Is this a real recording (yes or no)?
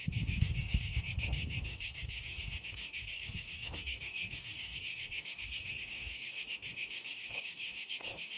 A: no